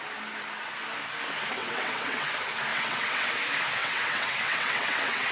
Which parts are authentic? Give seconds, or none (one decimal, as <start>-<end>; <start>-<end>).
0.0-1.6; 2.3-2.7; 3.3-3.8

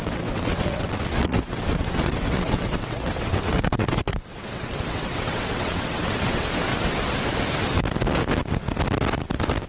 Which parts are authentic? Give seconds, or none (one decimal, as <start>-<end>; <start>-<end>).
6.7-9.7

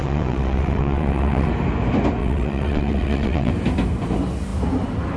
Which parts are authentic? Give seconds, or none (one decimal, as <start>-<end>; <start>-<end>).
1.5-2.2; 3.5-5.2

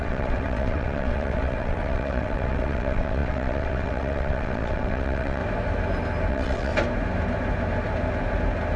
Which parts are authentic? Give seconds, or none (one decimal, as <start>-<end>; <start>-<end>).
5.4-6.3; 6.7-8.8

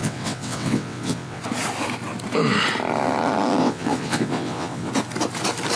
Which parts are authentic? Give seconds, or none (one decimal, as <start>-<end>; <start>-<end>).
1.4-3.6; 4.9-5.8

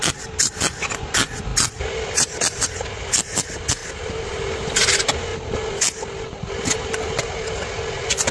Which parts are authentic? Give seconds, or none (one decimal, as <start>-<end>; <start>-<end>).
0.0-8.3

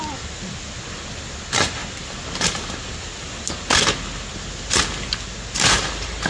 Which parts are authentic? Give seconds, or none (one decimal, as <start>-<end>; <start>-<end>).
0.0-6.3

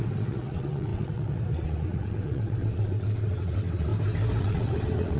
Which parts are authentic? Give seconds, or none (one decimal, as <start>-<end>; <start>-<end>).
3.9-4.4